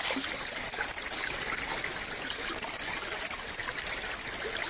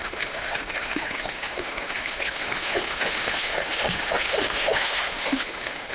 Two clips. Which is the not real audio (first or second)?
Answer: second